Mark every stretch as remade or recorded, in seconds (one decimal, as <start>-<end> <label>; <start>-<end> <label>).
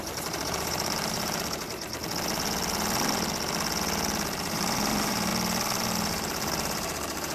0.0-2.0 remade; 2.0-4.4 recorded; 4.4-5.3 remade; 5.3-6.1 recorded; 6.1-7.3 remade